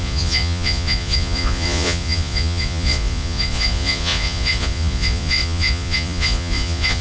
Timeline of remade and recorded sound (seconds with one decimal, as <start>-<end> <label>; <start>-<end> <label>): 0.0-7.0 remade